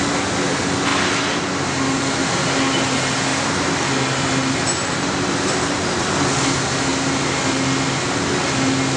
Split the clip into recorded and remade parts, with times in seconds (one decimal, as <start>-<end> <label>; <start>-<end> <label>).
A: 0.0-3.3 recorded; 3.3-6.0 remade; 6.0-9.0 recorded